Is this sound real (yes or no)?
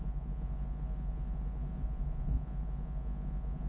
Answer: no